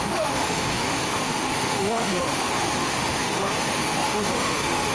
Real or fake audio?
fake